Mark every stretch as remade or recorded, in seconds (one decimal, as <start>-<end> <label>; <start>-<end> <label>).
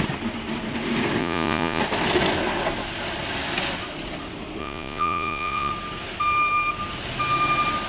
0.0-1.2 recorded; 1.2-1.8 remade; 1.8-4.6 recorded; 4.6-5.7 remade; 5.7-7.9 recorded